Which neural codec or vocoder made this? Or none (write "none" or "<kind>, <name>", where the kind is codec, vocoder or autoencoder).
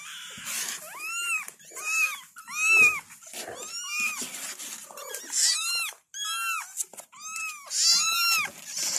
none